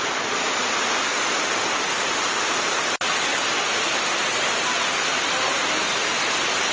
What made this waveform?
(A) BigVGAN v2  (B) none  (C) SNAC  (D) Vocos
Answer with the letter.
B